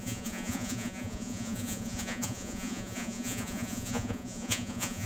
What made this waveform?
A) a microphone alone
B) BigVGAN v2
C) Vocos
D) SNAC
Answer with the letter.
C